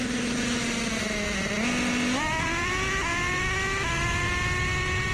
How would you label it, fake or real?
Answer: real